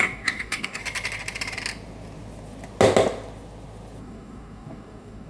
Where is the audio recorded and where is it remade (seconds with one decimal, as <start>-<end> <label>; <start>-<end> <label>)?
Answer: 0.0-0.8 remade; 0.8-4.0 recorded; 4.0-5.3 remade